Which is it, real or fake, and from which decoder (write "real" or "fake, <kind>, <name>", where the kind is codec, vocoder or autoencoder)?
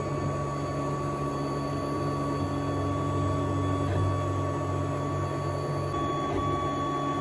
real